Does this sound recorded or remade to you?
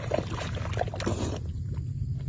recorded